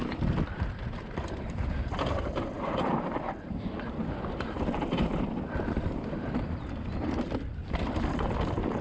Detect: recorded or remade remade